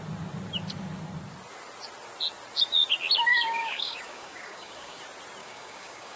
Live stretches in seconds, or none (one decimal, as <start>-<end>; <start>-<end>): 0.0-3.3; 5.0-5.4

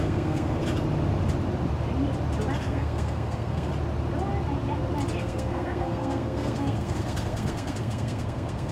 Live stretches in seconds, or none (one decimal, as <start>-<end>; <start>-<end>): 0.6-2.6; 3.7-5.2